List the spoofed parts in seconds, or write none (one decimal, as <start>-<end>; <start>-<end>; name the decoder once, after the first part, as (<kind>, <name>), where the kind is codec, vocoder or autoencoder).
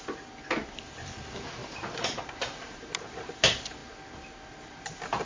1.6-2.8 (vocoder, BigVGAN v2)